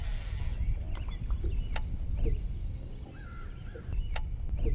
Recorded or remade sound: recorded